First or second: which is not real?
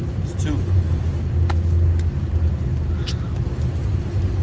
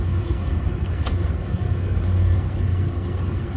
second